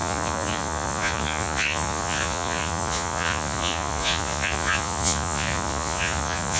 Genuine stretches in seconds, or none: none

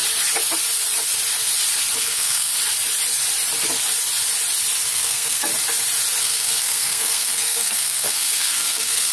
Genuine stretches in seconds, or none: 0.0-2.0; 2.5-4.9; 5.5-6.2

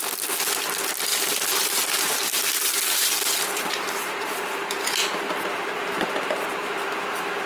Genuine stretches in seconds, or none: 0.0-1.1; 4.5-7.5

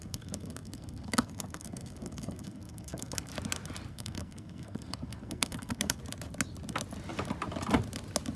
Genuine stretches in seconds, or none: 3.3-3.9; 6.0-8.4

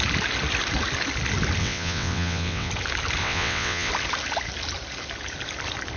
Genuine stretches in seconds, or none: 0.0-1.6; 2.7-3.2; 3.9-6.0

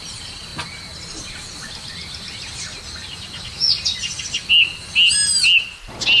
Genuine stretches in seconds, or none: 0.0-6.2